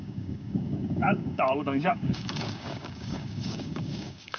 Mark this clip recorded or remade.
remade